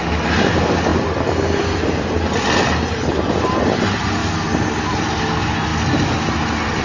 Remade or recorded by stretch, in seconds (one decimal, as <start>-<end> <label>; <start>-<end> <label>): 0.0-6.8 recorded